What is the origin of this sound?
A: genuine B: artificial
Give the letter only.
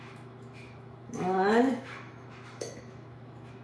B